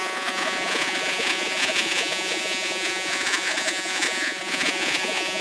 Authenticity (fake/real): fake